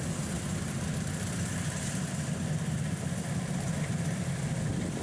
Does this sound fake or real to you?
real